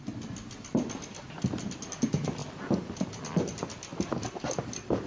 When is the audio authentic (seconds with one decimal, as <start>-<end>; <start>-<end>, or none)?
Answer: 0.0-5.1